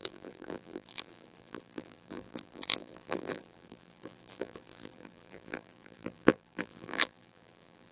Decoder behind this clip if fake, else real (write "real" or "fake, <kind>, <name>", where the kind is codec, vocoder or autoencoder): fake, vocoder, BigVGAN v2